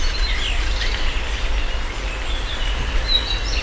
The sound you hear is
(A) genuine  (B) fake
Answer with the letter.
A